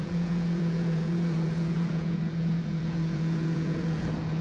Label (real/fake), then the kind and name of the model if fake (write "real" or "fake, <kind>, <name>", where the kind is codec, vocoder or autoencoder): fake, vocoder, Vocos